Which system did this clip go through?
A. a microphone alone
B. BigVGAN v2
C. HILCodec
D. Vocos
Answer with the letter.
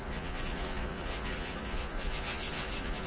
D